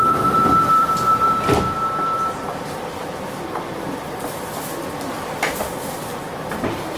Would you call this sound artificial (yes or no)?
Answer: yes